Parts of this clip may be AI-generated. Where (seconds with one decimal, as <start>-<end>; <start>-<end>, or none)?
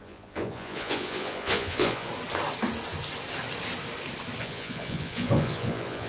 0.0-2.1; 4.4-6.1